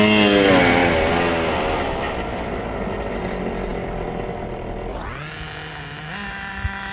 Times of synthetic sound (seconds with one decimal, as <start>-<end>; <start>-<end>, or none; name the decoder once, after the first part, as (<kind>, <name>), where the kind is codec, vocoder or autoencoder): none